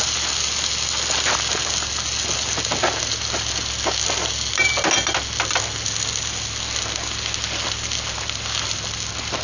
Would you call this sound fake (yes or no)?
no